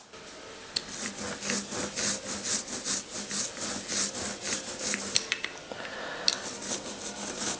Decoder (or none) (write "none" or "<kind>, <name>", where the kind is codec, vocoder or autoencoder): none